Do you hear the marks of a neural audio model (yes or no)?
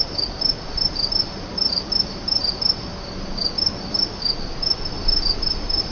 no